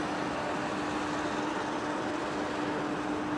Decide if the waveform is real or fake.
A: real